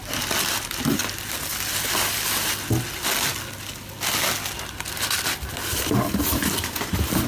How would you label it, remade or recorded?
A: recorded